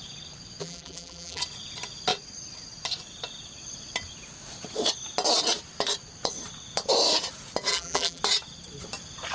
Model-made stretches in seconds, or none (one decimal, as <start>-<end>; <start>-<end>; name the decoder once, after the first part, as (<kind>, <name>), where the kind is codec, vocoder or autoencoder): 0.6-1.4 (vocoder, BigVGAN v2); 7.7-8.2